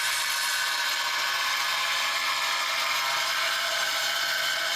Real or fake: real